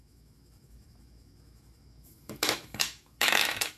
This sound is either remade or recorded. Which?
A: remade